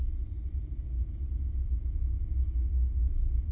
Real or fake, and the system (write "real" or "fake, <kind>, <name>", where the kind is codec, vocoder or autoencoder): real